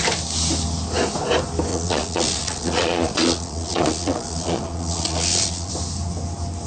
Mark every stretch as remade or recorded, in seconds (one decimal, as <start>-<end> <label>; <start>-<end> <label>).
0.0-1.7 recorded; 1.7-5.7 remade; 5.7-6.7 recorded